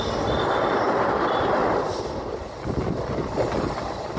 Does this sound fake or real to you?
real